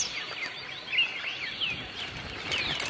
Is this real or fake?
real